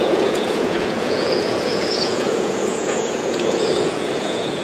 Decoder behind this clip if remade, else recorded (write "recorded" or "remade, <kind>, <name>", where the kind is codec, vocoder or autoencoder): remade, vocoder, Vocos